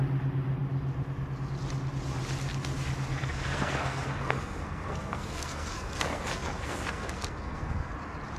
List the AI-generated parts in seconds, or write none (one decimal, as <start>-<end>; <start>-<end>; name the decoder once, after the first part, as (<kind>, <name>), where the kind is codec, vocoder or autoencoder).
3.1-7.9 (codec, SNAC)